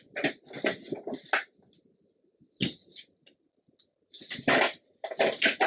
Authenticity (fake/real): real